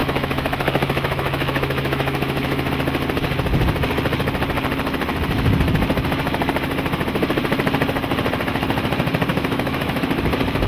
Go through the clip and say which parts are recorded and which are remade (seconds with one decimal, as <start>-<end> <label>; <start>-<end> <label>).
0.0-2.7 remade; 2.7-9.3 recorded; 9.3-10.0 remade; 10.0-10.7 recorded